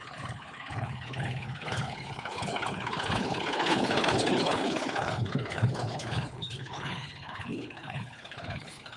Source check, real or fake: fake